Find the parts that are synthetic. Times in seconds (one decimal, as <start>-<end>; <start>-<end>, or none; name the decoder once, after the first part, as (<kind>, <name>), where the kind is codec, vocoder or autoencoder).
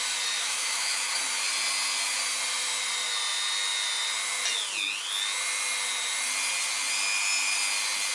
0.4-1.5 (autoencoder, DAC-VAE)